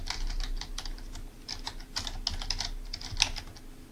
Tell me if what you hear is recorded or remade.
recorded